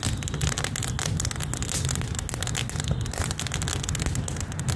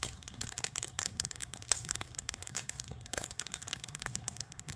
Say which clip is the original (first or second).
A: first